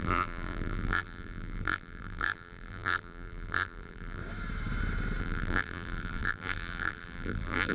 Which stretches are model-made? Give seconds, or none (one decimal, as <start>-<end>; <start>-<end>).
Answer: 0.0-4.2; 5.2-7.7